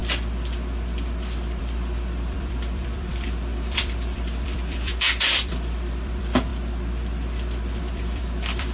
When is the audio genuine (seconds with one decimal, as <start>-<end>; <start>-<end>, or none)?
0.0-1.6; 6.5-7.8